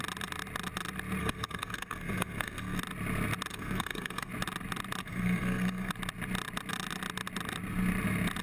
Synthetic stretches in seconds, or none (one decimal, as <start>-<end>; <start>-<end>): 1.2-2.8; 3.5-4.3; 5.0-5.9